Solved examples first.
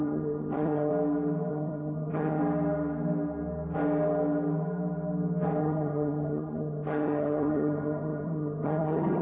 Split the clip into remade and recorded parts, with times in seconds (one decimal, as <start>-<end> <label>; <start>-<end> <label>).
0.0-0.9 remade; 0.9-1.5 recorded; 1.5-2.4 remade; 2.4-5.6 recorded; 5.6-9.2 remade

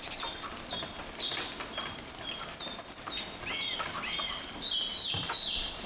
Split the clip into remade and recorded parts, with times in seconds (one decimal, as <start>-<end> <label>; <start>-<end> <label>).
0.0-5.9 recorded

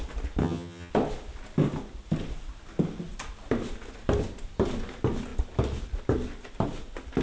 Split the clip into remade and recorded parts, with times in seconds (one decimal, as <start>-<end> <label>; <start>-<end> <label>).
0.0-0.4 recorded; 0.4-0.9 remade; 0.9-7.2 recorded

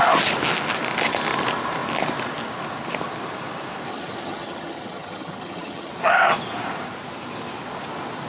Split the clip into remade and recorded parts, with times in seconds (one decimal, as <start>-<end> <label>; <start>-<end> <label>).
0.0-3.9 recorded; 3.9-5.9 remade; 5.9-8.3 recorded

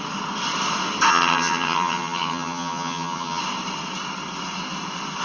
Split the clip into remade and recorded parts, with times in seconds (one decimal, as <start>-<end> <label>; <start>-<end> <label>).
0.0-1.1 recorded; 1.1-3.4 remade; 3.4-5.2 recorded

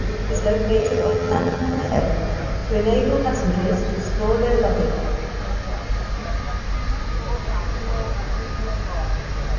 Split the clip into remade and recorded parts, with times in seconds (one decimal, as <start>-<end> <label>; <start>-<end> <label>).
0.0-0.8 recorded; 0.8-2.0 remade; 2.0-9.6 recorded

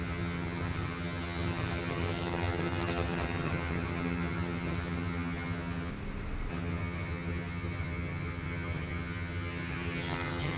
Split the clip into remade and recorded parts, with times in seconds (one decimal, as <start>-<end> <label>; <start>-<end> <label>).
0.0-5.9 remade; 5.9-6.5 recorded; 6.5-10.6 remade